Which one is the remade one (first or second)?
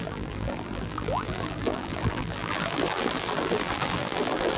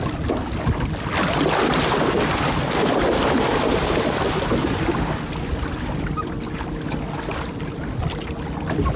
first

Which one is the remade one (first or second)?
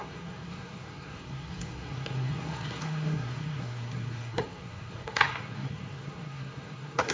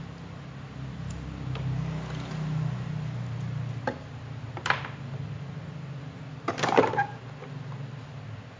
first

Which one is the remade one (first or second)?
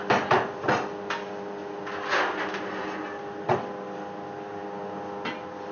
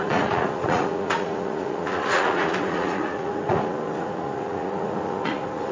second